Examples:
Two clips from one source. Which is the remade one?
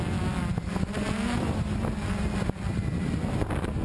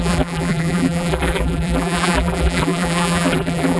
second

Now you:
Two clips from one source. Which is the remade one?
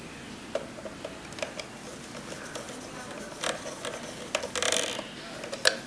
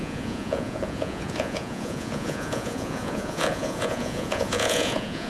second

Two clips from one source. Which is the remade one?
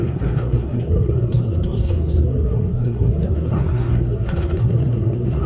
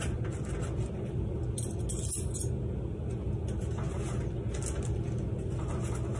first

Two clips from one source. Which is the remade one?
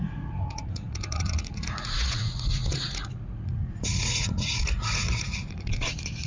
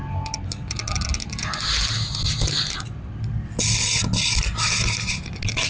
first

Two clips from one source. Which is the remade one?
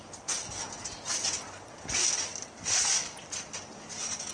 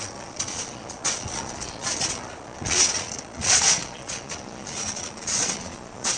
second